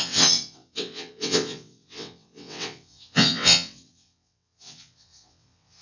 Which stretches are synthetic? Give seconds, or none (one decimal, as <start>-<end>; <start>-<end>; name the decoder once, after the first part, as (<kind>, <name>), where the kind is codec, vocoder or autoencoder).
0.0-5.8 (vocoder, WaveNeXt)